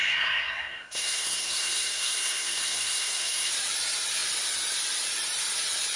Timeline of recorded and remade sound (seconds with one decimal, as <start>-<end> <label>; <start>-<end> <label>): 0.0-3.5 remade; 3.5-6.0 recorded